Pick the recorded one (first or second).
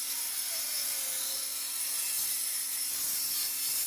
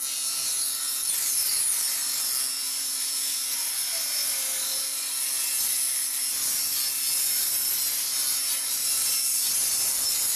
second